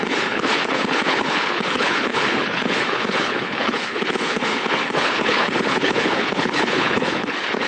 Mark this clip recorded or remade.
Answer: remade